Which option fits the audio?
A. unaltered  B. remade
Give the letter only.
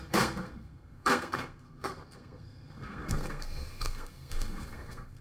B